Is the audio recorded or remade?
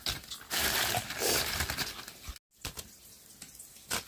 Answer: recorded